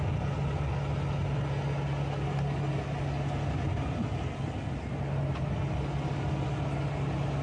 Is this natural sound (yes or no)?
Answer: yes